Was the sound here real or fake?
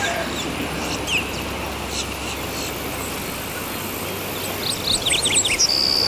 real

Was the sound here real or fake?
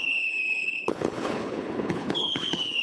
fake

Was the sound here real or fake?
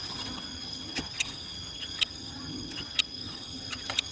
fake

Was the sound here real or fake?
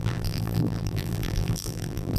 fake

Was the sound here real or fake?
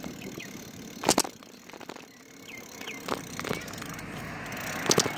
real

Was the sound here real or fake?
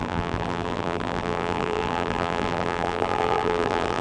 fake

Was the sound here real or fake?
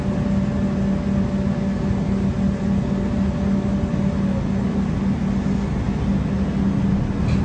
real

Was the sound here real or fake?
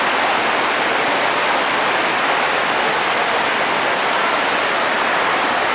real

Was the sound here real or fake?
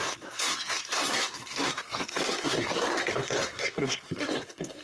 fake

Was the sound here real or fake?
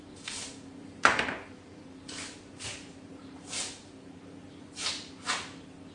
fake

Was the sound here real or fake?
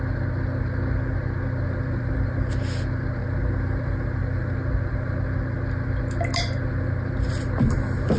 real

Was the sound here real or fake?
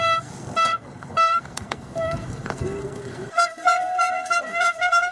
fake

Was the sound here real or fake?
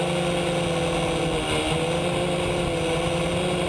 real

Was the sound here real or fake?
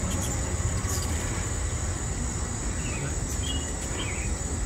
real